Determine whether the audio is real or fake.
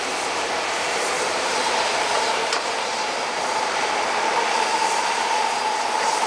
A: fake